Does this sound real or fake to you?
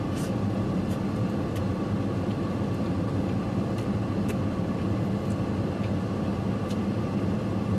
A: real